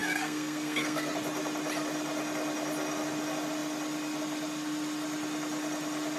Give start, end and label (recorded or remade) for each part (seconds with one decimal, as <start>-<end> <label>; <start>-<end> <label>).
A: 0.0-1.1 remade; 1.1-6.2 recorded